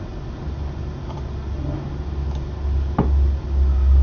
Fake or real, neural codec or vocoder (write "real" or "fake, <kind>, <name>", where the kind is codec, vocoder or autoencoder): real